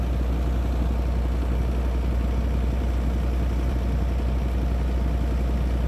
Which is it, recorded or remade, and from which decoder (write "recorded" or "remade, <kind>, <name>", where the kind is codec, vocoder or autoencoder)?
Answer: recorded